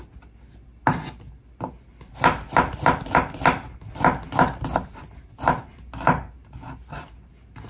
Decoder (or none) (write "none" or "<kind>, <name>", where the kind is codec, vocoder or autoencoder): none